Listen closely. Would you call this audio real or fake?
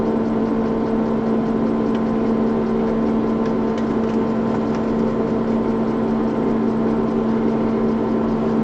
real